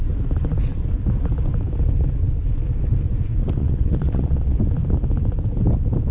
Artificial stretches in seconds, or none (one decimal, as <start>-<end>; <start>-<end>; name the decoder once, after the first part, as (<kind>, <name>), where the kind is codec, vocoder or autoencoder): 3.6-4.6 (vocoder, Vocos)

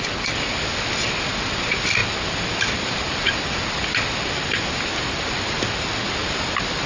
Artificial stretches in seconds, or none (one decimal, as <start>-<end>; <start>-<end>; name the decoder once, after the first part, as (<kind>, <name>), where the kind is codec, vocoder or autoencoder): none

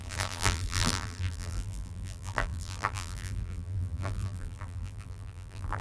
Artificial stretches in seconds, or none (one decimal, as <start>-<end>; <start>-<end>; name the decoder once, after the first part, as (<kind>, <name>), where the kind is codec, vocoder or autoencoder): 0.0-5.8 (vocoder, BigVGAN v2)

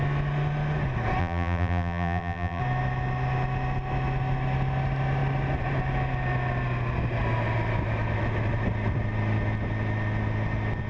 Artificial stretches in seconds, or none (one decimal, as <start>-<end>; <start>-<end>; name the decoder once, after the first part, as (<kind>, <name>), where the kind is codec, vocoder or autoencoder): 1.2-2.6 (vocoder, BigVGAN v2)

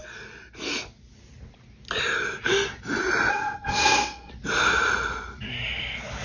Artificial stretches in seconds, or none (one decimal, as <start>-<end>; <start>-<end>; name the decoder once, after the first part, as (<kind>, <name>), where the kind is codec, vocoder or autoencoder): 3.3-4.3 (codec, SNAC)

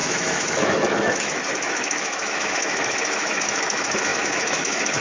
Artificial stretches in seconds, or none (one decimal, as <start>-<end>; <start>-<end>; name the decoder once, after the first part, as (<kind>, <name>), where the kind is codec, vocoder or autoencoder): 0.0-5.0 (autoencoder, DAC-VAE)